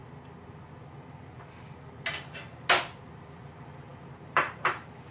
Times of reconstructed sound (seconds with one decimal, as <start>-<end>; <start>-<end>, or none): 3.1-5.1